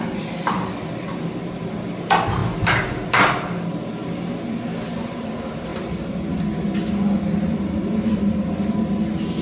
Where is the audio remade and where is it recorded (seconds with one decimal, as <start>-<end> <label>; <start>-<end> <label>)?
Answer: 0.0-9.4 recorded